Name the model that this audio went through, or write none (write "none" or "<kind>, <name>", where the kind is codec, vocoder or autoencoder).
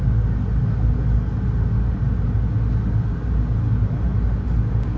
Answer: none